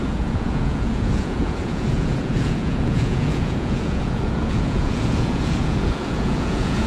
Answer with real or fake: fake